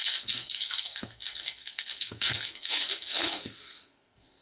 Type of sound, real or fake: fake